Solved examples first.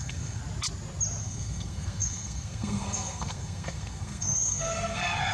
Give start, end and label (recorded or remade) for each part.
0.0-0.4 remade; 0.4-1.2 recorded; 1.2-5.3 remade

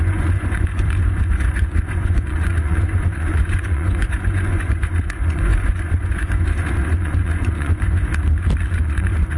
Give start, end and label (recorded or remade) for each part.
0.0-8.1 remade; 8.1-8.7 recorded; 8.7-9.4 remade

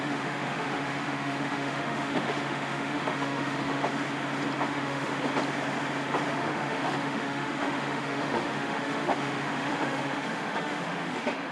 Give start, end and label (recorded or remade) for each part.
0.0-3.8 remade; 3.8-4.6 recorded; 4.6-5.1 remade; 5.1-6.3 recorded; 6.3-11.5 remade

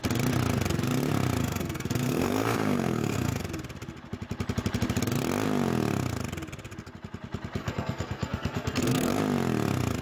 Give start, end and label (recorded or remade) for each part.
0.0-1.4 recorded; 1.4-3.4 remade; 3.4-7.6 recorded; 7.6-9.2 remade; 9.2-10.0 recorded

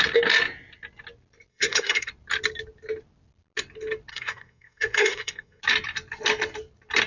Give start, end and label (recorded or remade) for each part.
0.0-1.5 recorded; 1.5-2.1 remade; 2.1-4.1 recorded; 4.1-5.6 remade; 5.6-7.1 recorded